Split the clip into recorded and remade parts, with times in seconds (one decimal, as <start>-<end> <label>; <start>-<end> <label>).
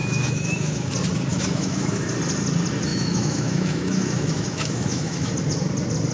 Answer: 0.0-0.9 remade; 0.9-1.3 recorded; 1.3-2.1 remade; 2.1-2.9 recorded; 2.9-5.3 remade; 5.3-6.1 recorded